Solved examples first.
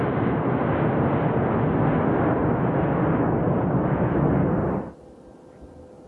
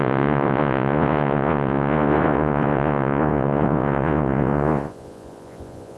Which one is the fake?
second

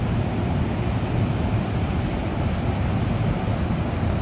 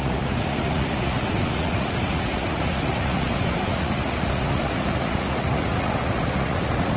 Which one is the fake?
second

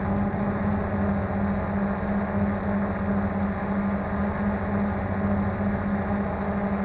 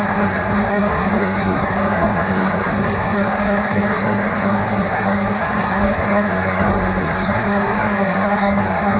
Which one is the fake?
second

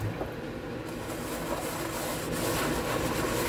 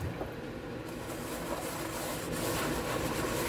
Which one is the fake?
second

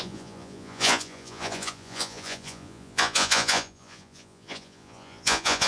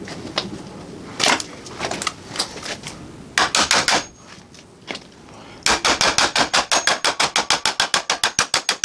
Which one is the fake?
first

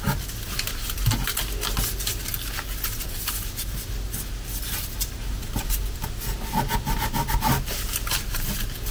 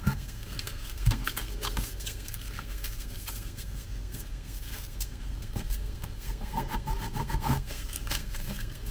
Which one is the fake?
second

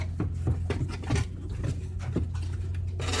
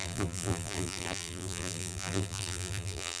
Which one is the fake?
second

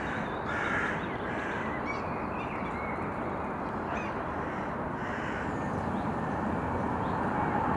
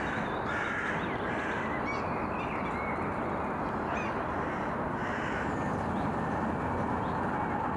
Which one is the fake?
first